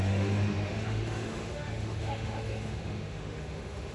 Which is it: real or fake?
fake